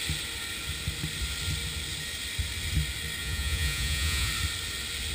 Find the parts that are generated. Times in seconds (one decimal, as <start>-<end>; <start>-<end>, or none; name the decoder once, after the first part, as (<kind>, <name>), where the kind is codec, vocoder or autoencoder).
3.2-4.3 (vocoder, Vocos)

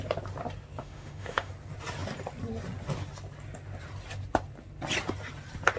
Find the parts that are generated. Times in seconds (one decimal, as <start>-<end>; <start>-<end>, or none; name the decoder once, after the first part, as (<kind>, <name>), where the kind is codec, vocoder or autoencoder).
0.8-1.5 (autoencoder, DAC-VAE)

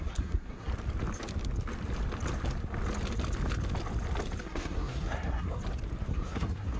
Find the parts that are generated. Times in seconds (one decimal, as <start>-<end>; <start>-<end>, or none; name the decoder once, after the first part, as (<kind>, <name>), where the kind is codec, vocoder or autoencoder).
0.0-0.7 (codec, SNAC); 4.4-5.6; 6.1-6.8

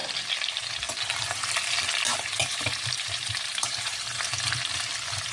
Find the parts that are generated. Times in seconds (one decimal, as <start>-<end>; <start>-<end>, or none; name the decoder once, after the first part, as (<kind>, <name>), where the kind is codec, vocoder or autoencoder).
2.4-4.5 (vocoder, BigVGAN v2)

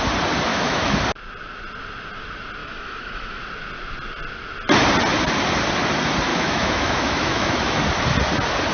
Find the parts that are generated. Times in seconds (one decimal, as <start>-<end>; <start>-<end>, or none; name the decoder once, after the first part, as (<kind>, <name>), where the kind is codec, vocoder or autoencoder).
0.5-1.0 (autoencoder, DAC-VAE); 2.6-3.4; 6.3-7.7

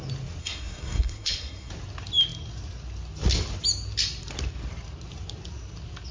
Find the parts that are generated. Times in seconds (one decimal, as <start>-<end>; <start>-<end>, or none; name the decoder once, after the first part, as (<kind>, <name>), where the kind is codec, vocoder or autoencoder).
0.4-1.7 (codec, SNAC)